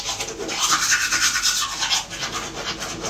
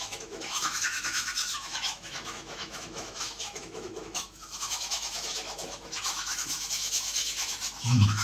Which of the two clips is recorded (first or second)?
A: first